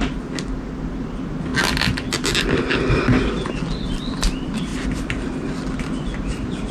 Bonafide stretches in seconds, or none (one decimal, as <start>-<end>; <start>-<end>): 0.0-6.7